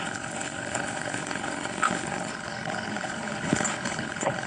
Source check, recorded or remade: remade